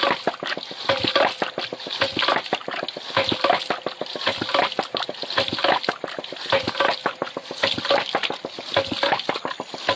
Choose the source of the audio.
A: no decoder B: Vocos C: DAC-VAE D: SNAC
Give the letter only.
A